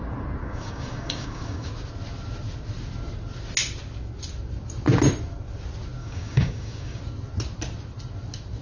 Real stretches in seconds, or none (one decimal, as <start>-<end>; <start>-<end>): 0.0-0.4; 1.7-6.0; 7.0-8.6